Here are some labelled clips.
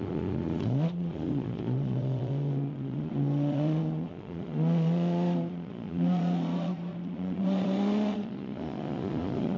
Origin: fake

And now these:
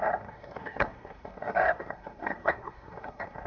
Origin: fake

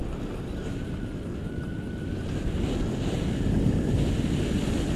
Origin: real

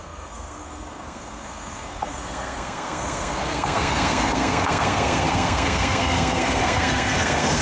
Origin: fake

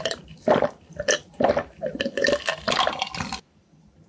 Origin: fake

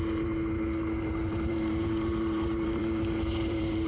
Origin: fake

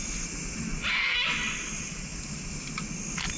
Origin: real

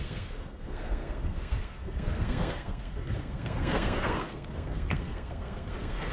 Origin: fake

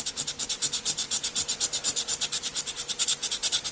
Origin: real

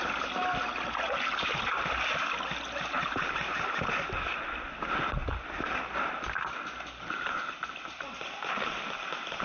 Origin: real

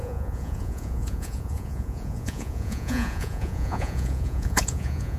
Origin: fake